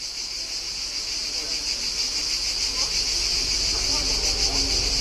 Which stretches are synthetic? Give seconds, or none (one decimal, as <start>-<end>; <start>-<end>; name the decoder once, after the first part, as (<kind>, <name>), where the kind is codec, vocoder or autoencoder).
none